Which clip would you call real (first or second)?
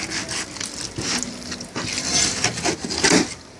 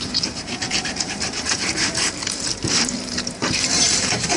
first